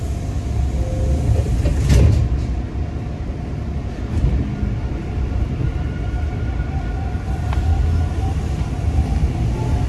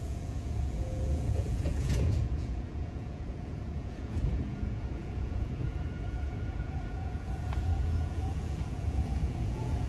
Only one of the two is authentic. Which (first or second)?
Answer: first